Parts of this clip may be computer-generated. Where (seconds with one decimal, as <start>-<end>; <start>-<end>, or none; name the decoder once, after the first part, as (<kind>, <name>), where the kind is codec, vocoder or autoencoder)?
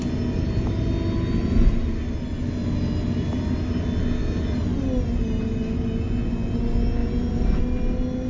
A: none